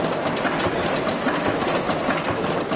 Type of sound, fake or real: real